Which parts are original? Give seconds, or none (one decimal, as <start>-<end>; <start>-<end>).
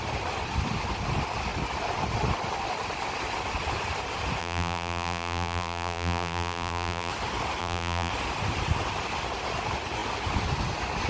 0.0-4.4; 7.1-7.6; 8.1-11.1